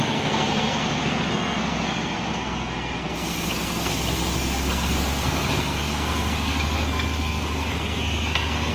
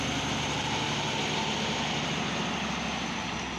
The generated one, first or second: first